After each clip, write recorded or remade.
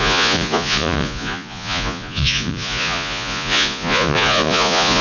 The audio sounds remade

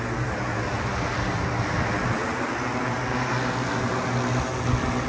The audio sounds recorded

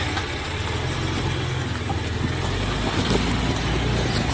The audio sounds recorded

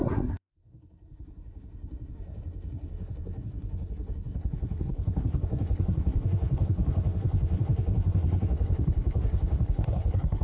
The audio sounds remade